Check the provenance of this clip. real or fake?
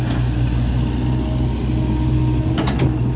real